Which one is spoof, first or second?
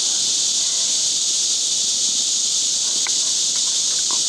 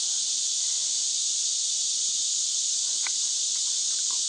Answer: second